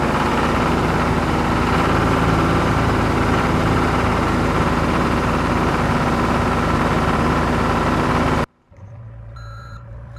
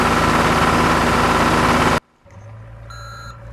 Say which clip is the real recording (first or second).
second